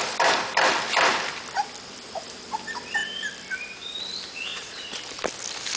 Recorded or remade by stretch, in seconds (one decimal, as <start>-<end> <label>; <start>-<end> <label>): 0.0-4.5 recorded; 4.5-5.0 remade; 5.0-5.8 recorded

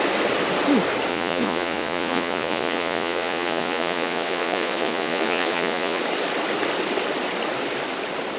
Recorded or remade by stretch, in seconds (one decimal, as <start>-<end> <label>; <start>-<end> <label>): 0.0-1.1 recorded; 1.1-6.0 remade; 6.0-8.4 recorded

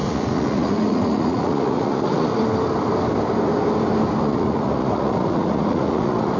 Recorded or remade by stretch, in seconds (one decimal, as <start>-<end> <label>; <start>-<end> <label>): 0.0-2.3 remade; 2.3-4.2 recorded; 4.2-6.4 remade